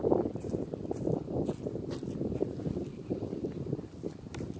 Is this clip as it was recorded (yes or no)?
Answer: no